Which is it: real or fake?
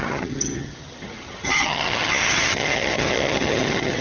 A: fake